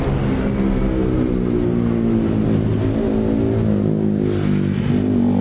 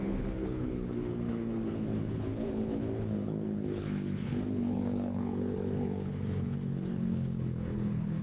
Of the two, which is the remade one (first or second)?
second